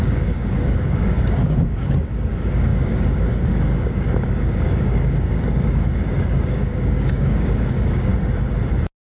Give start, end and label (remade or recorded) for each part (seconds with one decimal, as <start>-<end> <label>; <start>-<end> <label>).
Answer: 0.0-8.1 remade; 8.1-9.0 recorded